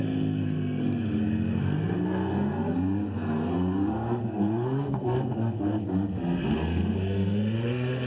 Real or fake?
fake